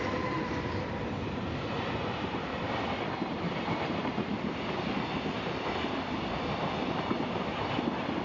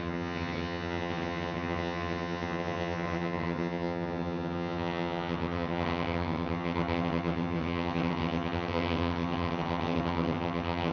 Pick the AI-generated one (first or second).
second